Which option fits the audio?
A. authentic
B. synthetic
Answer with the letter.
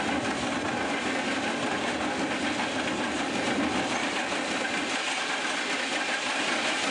A